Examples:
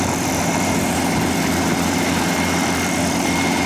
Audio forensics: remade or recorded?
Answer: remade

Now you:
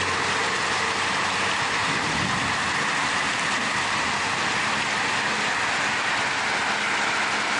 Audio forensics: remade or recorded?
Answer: recorded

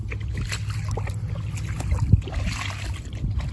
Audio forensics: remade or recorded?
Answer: recorded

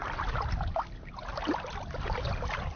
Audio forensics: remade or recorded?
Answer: recorded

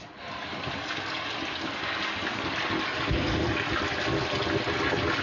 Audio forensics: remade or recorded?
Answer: recorded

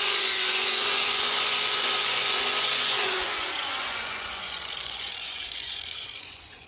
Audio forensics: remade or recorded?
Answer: remade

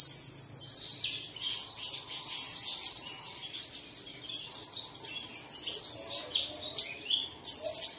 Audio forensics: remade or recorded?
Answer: recorded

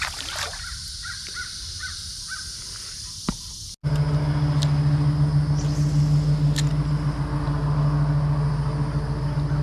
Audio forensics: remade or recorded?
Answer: recorded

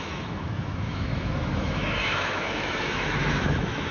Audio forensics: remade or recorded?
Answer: remade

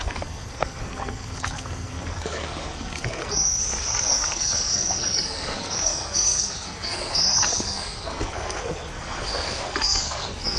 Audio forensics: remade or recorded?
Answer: remade